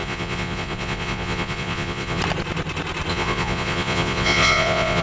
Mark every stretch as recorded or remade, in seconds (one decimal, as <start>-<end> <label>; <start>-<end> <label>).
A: 0.0-2.2 remade; 2.2-3.1 recorded; 3.1-5.0 remade